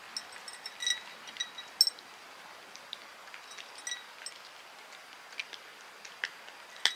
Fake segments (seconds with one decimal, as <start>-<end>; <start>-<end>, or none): none